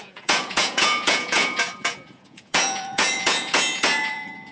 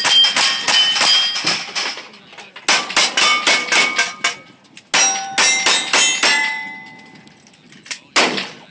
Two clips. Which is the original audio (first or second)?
second